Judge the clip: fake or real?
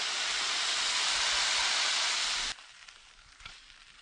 fake